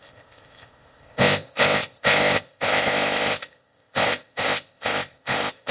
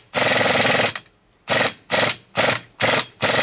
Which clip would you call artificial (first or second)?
first